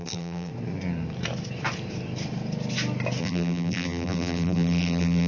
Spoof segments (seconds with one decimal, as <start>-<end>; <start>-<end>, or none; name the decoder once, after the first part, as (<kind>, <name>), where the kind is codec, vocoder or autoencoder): 0.0-0.5 (vocoder, BigVGAN v2); 3.2-5.3